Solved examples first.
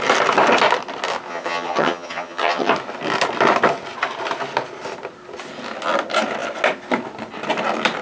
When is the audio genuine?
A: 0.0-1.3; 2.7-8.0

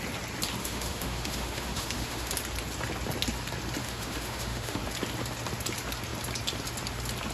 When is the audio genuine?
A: 0.0-0.6; 2.3-3.8; 4.8-7.3

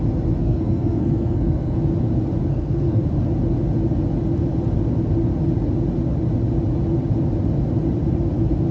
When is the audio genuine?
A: 0.0-0.4; 1.8-2.4; 3.0-8.7

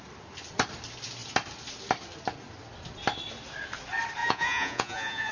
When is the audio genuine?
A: 0.0-4.2